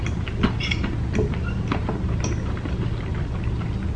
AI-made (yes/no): no